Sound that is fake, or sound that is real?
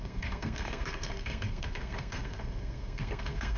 fake